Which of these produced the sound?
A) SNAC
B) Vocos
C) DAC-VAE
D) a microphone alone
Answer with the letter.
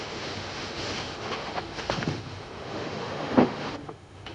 C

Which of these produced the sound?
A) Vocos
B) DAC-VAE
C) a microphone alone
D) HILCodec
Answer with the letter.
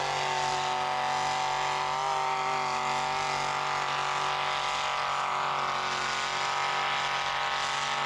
C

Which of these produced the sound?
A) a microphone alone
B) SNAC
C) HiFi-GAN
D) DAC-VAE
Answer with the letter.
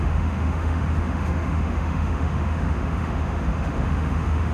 D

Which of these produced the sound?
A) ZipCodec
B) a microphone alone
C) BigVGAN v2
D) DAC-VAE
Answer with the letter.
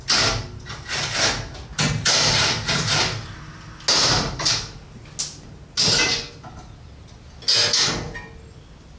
B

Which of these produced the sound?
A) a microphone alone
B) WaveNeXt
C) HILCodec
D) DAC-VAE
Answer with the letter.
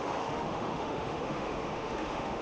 D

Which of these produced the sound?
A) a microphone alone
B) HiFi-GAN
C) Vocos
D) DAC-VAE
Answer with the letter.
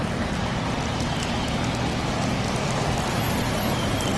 A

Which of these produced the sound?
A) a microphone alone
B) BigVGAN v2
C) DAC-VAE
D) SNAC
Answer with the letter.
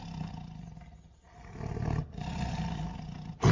A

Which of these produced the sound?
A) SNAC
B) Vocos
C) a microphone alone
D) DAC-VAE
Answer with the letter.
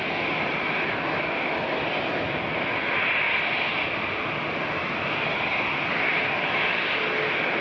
C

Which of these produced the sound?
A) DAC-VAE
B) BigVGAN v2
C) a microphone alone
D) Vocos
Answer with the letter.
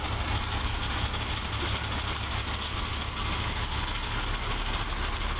C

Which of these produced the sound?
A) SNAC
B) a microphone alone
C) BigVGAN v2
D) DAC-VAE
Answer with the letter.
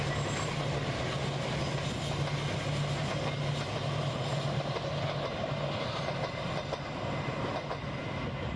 B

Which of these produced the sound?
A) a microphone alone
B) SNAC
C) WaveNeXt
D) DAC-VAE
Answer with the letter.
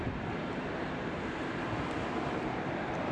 A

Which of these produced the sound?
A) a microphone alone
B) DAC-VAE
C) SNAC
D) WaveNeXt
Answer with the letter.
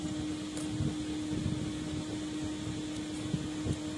A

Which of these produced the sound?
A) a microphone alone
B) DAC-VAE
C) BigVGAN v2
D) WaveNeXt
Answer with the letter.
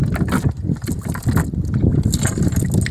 A